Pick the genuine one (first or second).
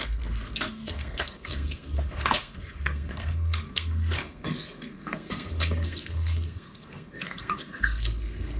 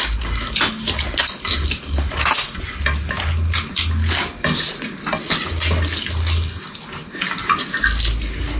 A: second